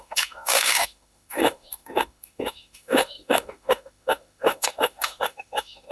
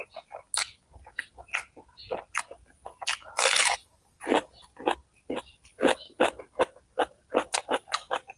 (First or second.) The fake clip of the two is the first